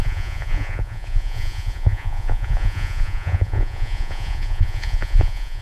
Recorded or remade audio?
remade